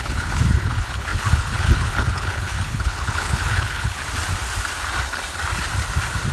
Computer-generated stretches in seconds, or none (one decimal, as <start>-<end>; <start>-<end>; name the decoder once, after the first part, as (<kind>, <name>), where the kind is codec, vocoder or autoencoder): 0.0-4.0 (codec, HILCodec)